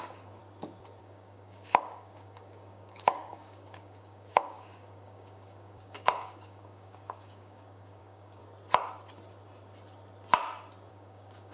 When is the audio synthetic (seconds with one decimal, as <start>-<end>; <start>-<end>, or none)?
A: 0.0-0.4; 1.0-8.4; 10.9-11.5